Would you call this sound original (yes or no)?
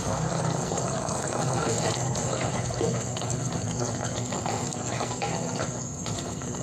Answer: no